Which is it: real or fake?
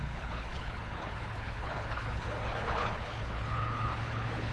fake